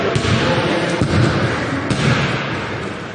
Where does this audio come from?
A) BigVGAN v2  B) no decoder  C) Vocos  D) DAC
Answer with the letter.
B